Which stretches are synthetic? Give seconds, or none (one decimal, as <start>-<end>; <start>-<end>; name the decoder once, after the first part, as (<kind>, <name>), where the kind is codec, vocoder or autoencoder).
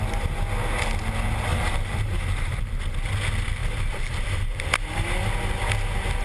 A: 1.5-2.6 (vocoder, BigVGAN v2); 3.6-4.6